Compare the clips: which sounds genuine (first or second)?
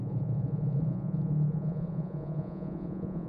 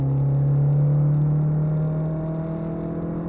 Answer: second